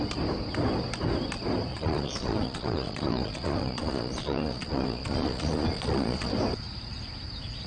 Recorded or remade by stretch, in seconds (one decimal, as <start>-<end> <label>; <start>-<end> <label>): 0.0-1.7 recorded; 1.7-6.3 remade; 6.3-7.7 recorded